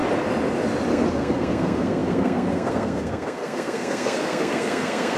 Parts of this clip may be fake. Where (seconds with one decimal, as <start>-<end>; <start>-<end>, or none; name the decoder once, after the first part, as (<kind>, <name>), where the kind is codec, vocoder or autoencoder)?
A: 0.9-5.2 (codec, SNAC)